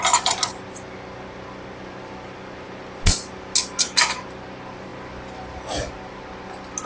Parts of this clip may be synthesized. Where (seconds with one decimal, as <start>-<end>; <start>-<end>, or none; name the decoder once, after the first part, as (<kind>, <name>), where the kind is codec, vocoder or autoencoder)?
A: none

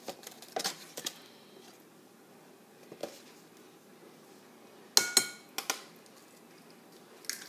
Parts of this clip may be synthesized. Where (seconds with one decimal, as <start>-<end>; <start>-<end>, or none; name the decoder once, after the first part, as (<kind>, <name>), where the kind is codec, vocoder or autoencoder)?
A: none

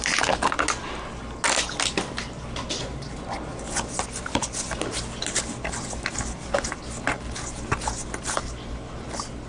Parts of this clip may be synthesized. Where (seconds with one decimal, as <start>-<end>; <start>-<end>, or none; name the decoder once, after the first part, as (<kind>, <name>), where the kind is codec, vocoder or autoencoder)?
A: none

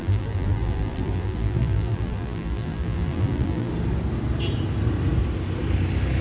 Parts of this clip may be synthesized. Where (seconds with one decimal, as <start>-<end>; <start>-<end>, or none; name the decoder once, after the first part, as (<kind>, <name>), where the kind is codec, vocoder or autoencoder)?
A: 0.0-3.7 (vocoder, BigVGAN v2)

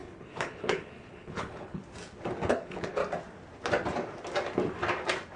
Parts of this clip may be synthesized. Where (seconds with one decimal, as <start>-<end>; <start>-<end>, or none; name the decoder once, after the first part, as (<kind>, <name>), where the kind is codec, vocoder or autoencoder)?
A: 0.0-1.8 (codec, HILCodec); 2.5-3.0

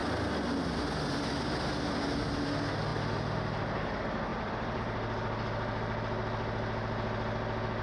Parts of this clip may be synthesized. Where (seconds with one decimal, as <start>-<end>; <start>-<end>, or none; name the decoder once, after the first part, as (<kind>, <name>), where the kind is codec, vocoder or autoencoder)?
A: 0.0-0.8 (vocoder, BigVGAN v2); 4.3-4.8

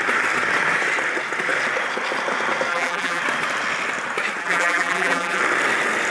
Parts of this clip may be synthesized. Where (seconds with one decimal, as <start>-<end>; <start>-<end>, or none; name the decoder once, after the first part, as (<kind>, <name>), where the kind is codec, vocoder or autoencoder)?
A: 2.7-3.2 (vocoder, BigVGAN v2); 4.4-5.4

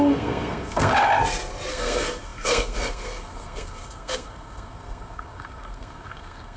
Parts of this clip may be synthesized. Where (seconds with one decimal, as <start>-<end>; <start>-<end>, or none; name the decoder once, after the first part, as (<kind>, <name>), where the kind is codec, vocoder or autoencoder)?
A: 0.0-0.9 (codec, SNAC); 1.7-6.6